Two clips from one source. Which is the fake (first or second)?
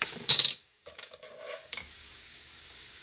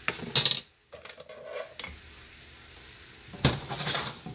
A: first